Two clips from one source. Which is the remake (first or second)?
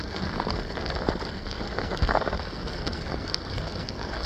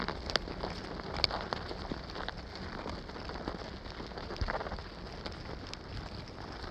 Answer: first